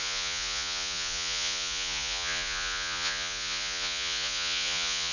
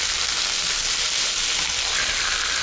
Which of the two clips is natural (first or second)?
second